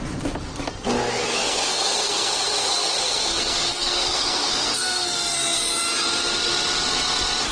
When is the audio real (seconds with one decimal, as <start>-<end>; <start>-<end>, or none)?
0.0-1.2; 5.7-7.5